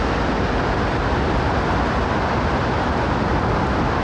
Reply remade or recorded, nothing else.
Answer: recorded